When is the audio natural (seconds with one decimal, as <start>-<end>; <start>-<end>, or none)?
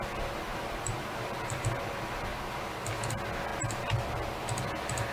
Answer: 0.0-0.5; 1.6-3.5; 4.3-5.1